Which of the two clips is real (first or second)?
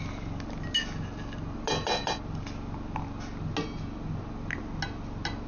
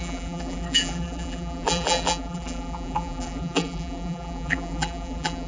first